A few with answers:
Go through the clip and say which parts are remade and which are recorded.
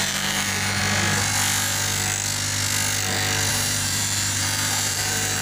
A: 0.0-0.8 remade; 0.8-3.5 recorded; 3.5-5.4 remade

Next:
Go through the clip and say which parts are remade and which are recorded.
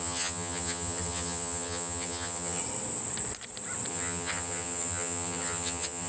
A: 0.0-2.6 remade; 2.6-3.9 recorded; 3.9-6.1 remade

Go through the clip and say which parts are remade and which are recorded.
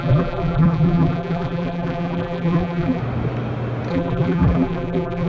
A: 0.0-3.0 remade; 3.0-3.9 recorded; 3.9-5.3 remade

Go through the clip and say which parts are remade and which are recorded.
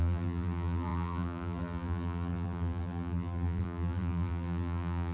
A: 0.0-5.1 remade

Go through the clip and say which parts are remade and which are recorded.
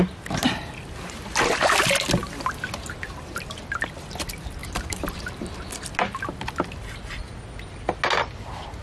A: 0.0-4.6 recorded; 4.6-5.6 remade; 5.6-8.8 recorded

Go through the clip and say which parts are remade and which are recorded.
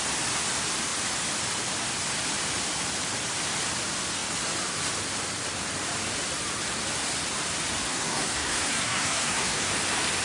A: 0.0-7.9 recorded; 7.9-9.7 remade; 9.7-10.2 recorded